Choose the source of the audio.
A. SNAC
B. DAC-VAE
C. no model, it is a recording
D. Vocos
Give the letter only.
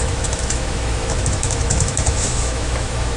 B